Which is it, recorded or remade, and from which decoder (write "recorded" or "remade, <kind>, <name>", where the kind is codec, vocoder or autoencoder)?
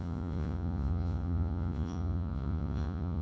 remade, vocoder, Vocos